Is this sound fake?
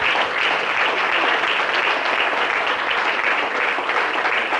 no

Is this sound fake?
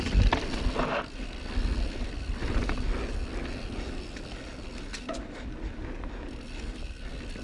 no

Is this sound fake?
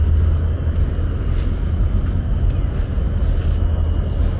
no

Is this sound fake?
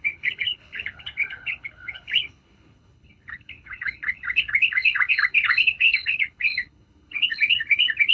yes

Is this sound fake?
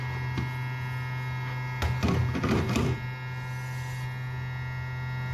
no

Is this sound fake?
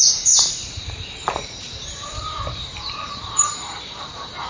yes